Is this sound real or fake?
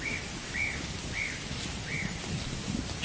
fake